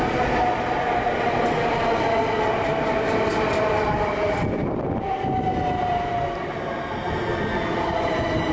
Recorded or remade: recorded